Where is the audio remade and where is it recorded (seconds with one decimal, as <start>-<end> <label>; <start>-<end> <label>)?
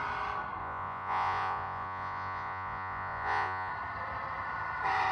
0.0-0.6 recorded; 0.6-3.7 remade; 3.7-5.1 recorded